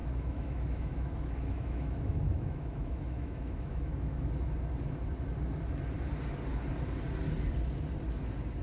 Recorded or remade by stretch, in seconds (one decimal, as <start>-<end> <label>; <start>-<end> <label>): 0.0-4.3 remade; 4.3-8.6 recorded